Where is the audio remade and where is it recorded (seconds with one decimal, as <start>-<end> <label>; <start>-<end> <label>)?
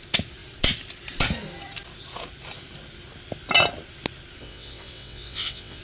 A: 0.0-4.4 recorded; 4.4-5.8 remade